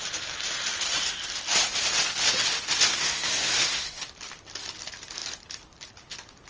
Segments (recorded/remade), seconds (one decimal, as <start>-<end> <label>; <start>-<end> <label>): 0.0-2.9 recorded; 2.9-4.0 remade; 4.0-6.5 recorded